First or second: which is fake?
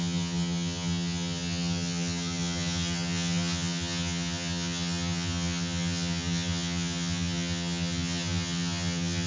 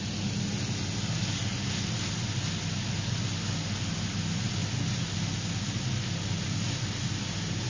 first